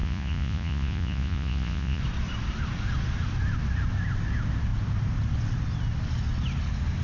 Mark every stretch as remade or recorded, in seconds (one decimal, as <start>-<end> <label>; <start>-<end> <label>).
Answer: 0.0-2.0 remade; 2.0-7.0 recorded